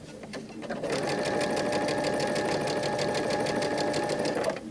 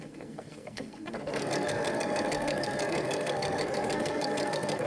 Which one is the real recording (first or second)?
first